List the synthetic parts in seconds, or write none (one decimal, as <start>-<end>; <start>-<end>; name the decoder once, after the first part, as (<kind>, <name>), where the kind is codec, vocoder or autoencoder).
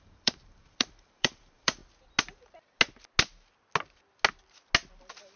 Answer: 0.0-1.8 (vocoder, BigVGAN v2); 5.0-5.4